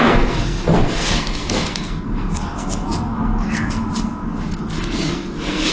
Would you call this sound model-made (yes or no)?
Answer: yes